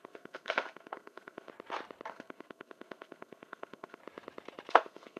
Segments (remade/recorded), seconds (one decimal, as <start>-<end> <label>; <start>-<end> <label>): 0.0-1.5 remade; 1.5-2.1 recorded; 2.1-4.0 remade; 4.0-4.7 recorded; 4.7-5.2 remade